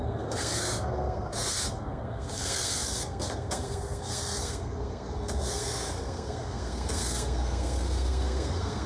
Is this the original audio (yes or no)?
no